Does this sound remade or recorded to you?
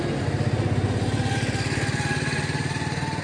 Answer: recorded